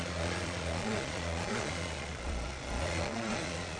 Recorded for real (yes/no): no